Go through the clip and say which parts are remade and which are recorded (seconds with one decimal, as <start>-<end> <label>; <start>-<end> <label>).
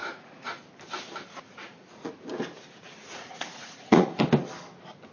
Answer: 0.0-0.7 remade; 0.7-1.5 recorded; 1.5-2.1 remade; 2.1-3.0 recorded; 3.0-4.2 remade; 4.2-5.1 recorded